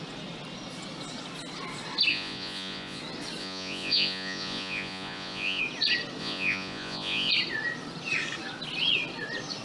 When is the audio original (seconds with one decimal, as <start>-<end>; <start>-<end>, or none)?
0.0-2.1; 3.0-3.4; 5.6-6.2; 7.3-9.6